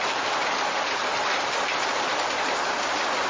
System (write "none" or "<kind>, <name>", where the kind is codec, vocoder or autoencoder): none